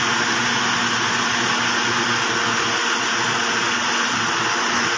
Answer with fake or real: real